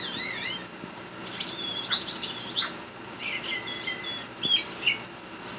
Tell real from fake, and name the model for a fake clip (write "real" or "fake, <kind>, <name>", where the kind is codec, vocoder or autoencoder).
real